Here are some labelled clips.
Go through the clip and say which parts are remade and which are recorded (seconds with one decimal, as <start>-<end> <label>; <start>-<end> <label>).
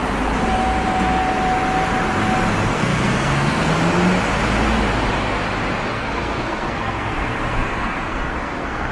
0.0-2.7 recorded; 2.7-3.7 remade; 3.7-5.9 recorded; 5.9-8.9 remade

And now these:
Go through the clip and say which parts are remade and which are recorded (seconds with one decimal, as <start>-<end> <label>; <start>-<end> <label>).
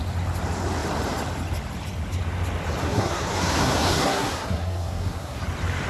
0.0-2.8 recorded; 2.8-5.4 remade; 5.4-5.9 recorded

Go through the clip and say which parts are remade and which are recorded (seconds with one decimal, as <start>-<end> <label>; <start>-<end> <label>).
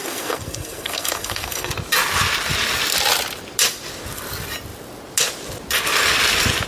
0.0-1.7 remade; 1.7-6.7 recorded